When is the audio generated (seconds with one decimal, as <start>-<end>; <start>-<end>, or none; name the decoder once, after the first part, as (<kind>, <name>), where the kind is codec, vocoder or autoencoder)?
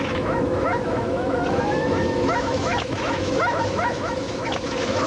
0.0-5.1 (autoencoder, DAC-VAE)